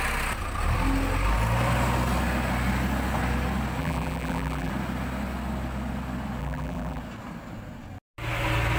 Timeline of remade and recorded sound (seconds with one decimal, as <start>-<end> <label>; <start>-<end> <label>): 0.0-3.8 recorded; 3.8-4.7 remade; 4.7-6.4 recorded; 6.4-7.0 remade; 7.0-8.8 recorded